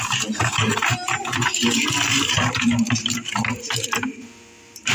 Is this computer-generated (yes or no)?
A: no